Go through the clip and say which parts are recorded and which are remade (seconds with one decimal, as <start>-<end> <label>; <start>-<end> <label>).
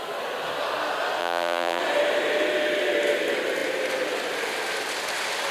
0.0-1.2 recorded; 1.2-1.8 remade; 1.8-5.5 recorded